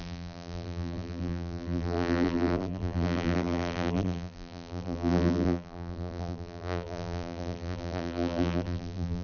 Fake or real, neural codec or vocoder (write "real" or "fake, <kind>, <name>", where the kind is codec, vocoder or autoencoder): fake, vocoder, BigVGAN v2